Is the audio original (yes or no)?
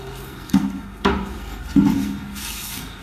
no